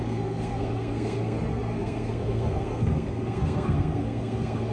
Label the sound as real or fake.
fake